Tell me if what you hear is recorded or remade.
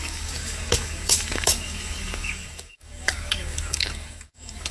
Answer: remade